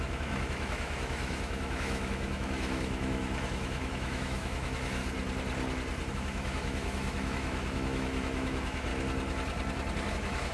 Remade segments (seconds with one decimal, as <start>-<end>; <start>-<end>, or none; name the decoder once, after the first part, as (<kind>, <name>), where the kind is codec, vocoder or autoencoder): 0.0-5.0 (autoencoder, DAC-VAE); 6.1-8.9; 10.1-10.5